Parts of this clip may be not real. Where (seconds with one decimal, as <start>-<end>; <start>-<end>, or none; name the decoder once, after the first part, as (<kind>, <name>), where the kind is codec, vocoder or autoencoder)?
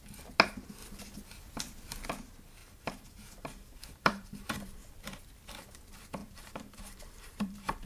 2.6-4.9 (vocoder, BigVGAN v2); 6.2-7.9